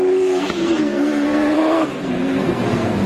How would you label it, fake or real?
fake